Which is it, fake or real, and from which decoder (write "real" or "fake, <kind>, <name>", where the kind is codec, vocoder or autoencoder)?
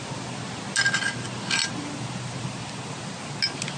real